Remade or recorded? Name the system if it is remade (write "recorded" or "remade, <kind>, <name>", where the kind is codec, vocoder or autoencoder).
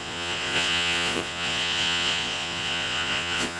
remade, vocoder, Vocos